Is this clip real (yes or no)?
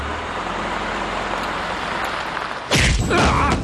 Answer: yes